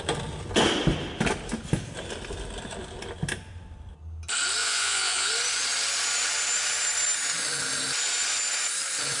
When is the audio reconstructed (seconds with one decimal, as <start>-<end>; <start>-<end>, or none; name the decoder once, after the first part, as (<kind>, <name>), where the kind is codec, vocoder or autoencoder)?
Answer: 4.6-5.3 (vocoder, Vocos)